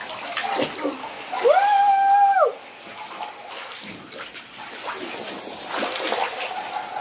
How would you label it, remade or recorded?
recorded